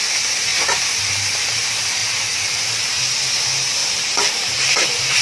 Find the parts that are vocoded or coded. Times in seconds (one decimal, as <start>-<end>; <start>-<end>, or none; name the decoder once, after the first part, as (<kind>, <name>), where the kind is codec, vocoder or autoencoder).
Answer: 0.5-1.5 (vocoder, BigVGAN v2); 2.0-2.7; 3.8-5.2